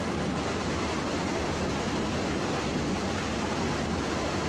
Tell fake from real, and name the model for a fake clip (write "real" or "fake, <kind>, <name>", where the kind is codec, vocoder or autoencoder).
real